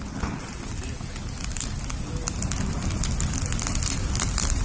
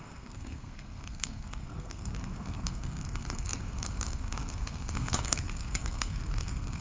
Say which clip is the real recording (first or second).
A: first